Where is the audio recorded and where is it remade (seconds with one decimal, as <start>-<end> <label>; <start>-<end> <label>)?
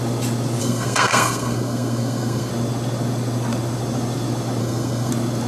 0.0-0.6 recorded; 0.6-2.5 remade; 2.5-4.6 recorded; 4.6-5.1 remade; 5.1-5.5 recorded